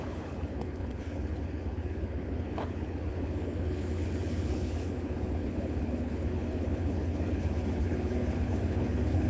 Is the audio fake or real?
fake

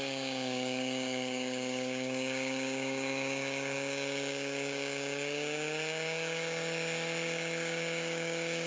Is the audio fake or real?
fake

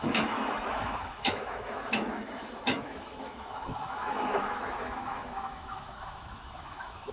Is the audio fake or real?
fake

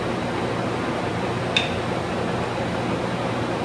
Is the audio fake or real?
real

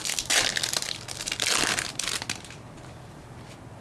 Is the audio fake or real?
real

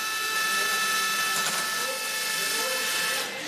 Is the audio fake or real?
real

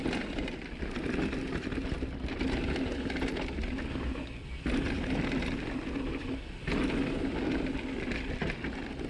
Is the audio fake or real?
real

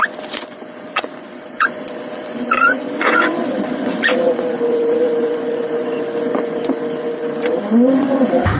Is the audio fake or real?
fake